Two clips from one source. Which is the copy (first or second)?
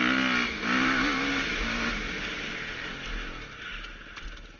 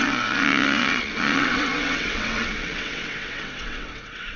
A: second